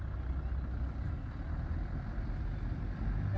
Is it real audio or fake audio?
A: real